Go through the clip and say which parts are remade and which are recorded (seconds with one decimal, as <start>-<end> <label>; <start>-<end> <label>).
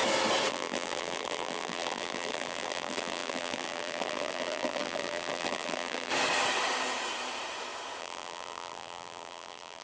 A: 0.0-0.5 recorded; 0.5-6.1 remade; 6.1-8.0 recorded; 8.0-9.8 remade